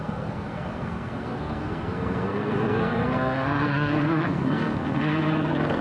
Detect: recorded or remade remade